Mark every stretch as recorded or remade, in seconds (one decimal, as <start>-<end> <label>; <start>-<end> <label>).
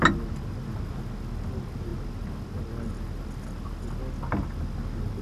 0.0-5.2 recorded